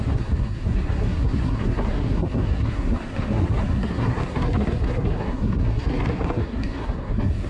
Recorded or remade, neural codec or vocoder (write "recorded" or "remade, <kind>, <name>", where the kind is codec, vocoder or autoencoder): remade, codec, SNAC